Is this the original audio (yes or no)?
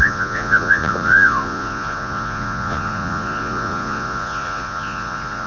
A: no